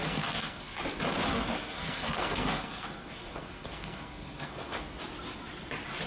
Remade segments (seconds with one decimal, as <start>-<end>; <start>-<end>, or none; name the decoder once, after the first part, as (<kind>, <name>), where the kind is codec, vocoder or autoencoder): 0.0-0.8 (codec, SNAC); 1.3-5.0